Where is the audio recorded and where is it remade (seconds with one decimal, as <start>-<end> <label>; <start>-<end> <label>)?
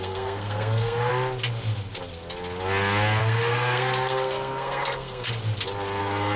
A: 0.0-1.1 remade; 1.1-3.2 recorded; 3.2-5.4 remade; 5.4-6.0 recorded; 6.0-6.4 remade